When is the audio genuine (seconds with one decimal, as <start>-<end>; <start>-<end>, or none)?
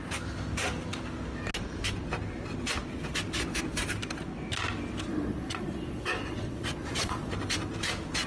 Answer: 0.0-5.1; 7.3-8.3